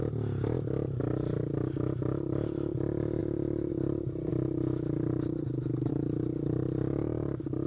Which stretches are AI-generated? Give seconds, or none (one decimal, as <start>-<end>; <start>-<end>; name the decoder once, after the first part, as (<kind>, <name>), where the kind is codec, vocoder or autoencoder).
none